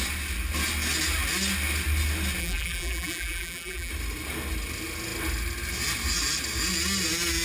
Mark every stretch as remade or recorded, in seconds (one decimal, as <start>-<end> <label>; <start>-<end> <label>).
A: 0.0-2.4 recorded; 2.4-3.9 remade; 3.9-7.4 recorded